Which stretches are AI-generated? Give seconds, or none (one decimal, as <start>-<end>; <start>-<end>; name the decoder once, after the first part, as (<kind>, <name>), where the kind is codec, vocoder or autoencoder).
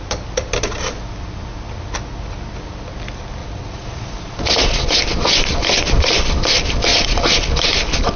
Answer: 3.4-5.0 (vocoder, Vocos); 6.9-7.4